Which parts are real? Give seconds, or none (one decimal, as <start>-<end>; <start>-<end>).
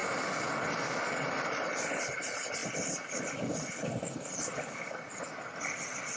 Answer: 0.0-6.2